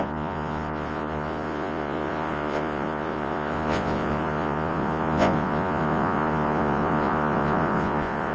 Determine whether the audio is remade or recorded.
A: remade